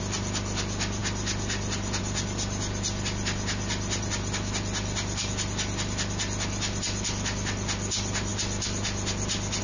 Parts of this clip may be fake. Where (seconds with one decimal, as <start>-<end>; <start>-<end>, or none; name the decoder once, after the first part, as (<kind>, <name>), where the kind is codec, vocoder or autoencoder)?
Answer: none